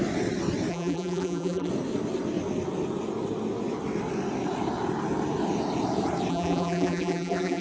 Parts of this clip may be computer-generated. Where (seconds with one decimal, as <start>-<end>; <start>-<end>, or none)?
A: 0.7-1.7; 6.3-7.6